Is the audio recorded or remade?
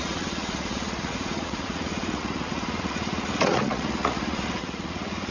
remade